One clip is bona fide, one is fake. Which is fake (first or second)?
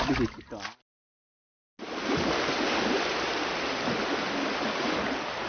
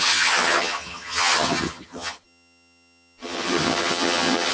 second